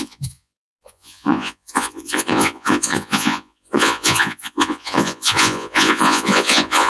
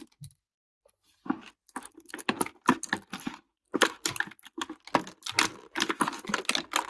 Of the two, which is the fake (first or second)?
first